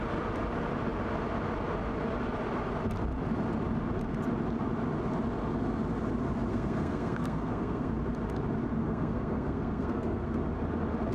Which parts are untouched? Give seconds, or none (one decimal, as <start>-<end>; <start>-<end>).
0.0-6.5; 7.9-8.8; 10.4-11.1